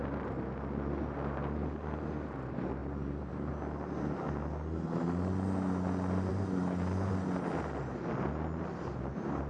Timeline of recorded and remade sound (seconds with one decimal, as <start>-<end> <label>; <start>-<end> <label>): 0.0-2.8 recorded; 2.8-3.5 remade; 3.5-6.3 recorded; 6.3-7.1 remade; 7.1-9.5 recorded